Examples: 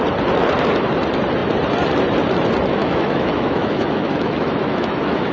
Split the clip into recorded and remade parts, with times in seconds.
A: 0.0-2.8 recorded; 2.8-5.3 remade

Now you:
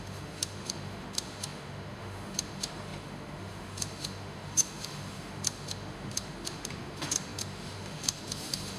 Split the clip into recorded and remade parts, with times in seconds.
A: 0.0-8.8 remade

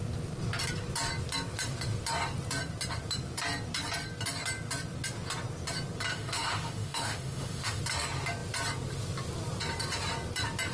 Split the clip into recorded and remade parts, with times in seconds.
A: 0.0-6.1 recorded; 6.1-7.8 remade; 7.8-10.7 recorded

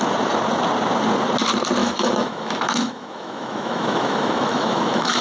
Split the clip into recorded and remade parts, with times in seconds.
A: 0.0-1.8 recorded; 1.8-5.2 remade

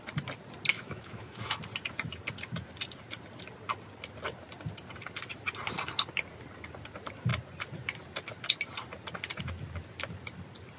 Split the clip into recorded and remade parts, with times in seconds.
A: 0.0-0.7 recorded; 0.7-1.6 remade; 1.6-10.8 recorded

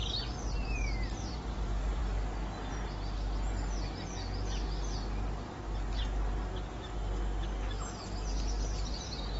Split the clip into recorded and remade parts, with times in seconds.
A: 0.0-9.4 recorded